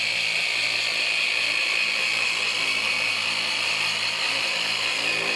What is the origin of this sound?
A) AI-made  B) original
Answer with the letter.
B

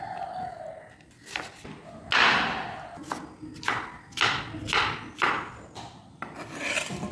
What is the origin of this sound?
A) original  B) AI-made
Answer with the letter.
A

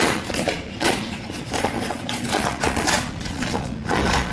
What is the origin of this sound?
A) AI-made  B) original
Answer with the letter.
A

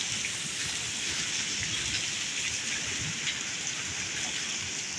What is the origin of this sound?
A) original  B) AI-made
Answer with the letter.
A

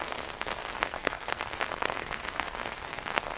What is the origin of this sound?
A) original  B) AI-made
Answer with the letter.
B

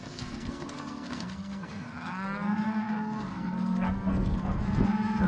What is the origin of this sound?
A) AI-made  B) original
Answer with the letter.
A